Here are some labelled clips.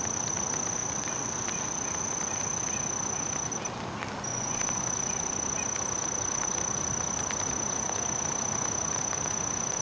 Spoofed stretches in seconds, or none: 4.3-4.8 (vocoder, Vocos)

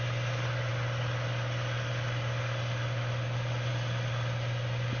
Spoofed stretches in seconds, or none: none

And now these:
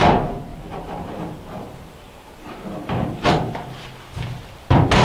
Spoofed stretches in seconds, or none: 0.5-3.5 (vocoder, BigVGAN v2)